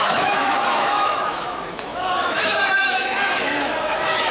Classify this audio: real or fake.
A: fake